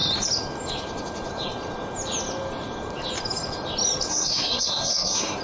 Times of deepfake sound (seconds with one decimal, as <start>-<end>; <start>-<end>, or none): 4.1-5.4